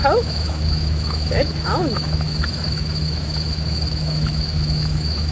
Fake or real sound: fake